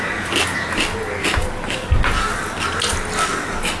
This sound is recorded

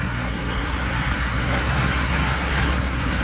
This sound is remade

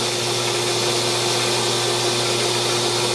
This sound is recorded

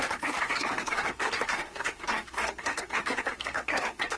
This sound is remade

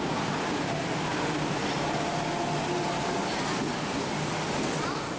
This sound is recorded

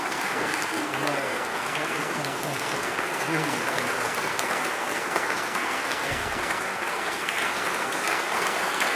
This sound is remade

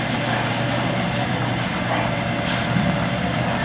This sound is recorded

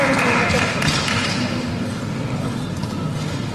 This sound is recorded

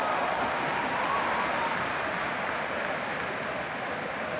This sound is recorded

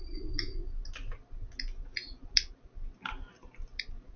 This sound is recorded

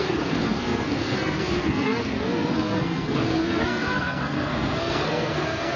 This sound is remade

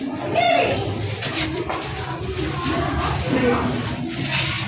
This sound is recorded